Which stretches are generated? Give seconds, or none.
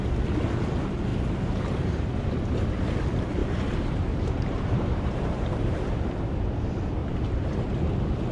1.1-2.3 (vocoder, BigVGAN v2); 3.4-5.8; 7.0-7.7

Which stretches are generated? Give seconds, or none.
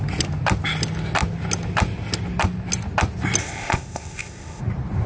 3.4-4.6 (codec, ZipCodec)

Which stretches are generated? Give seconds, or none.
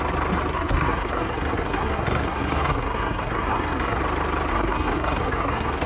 0.5-4.0 (codec, SNAC); 4.5-5.9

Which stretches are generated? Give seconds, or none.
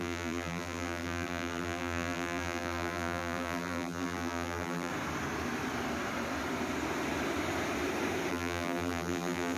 0.0-4.9 (vocoder, BigVGAN v2); 8.3-9.6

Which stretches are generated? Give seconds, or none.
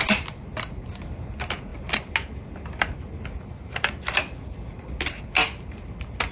none